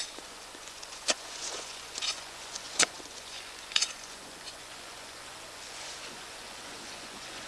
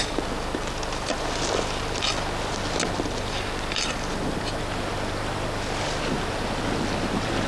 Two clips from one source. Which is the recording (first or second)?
second